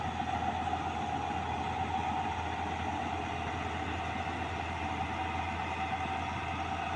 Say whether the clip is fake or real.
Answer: real